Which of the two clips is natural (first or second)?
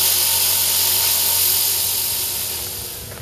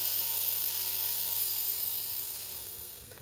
first